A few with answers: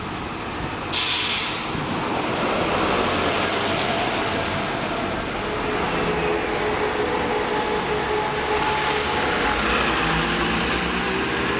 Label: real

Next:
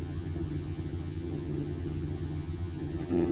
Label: fake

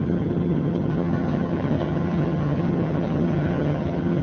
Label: fake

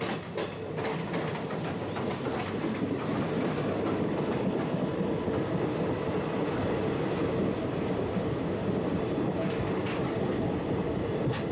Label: real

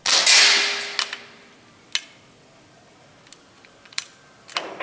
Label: real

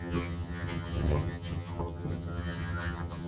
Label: fake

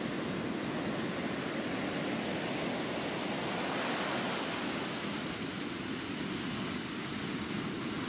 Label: real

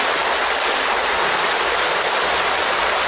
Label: real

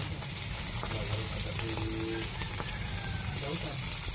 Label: real